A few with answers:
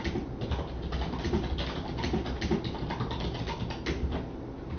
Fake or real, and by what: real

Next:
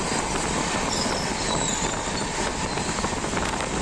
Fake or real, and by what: real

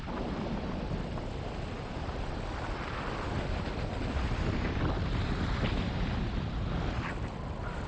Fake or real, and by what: real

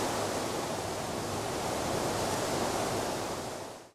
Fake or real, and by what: real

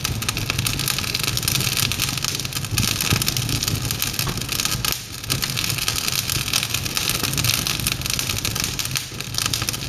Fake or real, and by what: real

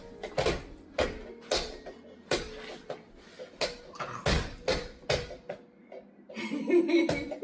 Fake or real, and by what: real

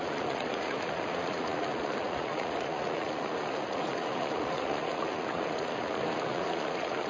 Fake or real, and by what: fake, vocoder, Vocos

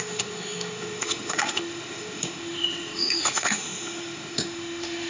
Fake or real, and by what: fake, autoencoder, DAC-VAE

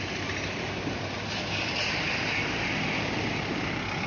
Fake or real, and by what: real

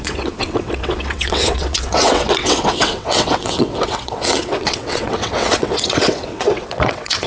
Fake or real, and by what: fake, vocoder, WaveNeXt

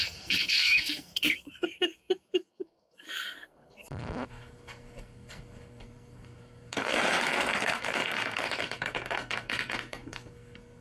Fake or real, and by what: fake, codec, SNAC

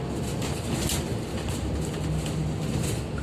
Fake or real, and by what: real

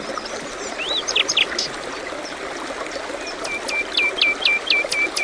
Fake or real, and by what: real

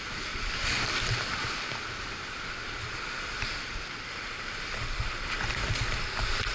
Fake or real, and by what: real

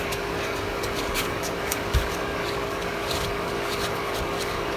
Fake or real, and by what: fake, codec, DAC